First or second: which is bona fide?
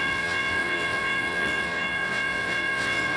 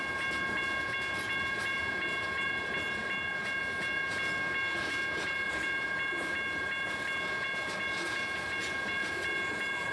second